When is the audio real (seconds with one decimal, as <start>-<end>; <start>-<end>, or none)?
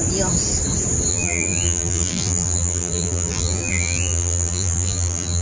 0.0-1.1